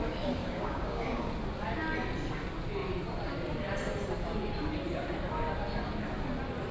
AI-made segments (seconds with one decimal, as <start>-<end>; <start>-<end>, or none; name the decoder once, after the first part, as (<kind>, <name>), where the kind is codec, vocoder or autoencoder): 0.4-1.3 (codec, DAC)